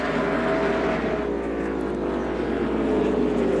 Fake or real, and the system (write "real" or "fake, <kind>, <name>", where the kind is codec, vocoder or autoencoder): real